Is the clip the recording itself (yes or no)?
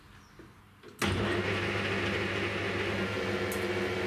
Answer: yes